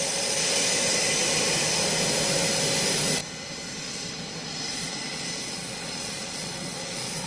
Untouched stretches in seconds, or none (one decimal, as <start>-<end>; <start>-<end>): 0.0-4.7